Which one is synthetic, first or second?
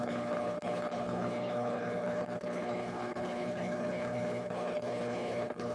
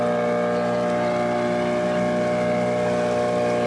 first